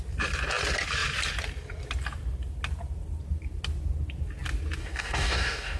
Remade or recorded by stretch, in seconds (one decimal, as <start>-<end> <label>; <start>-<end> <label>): 0.0-4.8 recorded; 4.8-5.8 remade